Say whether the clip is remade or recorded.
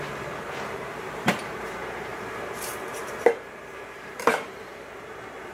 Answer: remade